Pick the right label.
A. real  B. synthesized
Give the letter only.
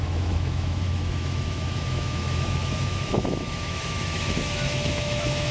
B